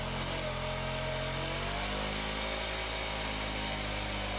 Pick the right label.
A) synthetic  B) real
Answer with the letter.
B